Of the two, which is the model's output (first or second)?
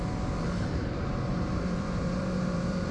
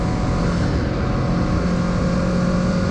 first